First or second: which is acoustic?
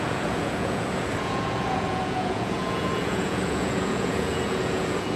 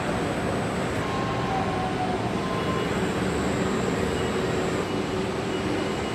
second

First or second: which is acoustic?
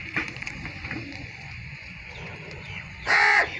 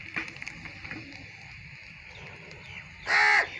second